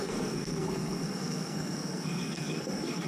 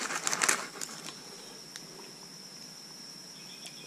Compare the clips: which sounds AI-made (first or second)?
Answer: first